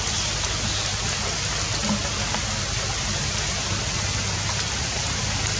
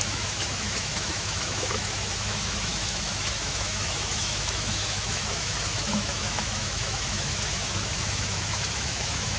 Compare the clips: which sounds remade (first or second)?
second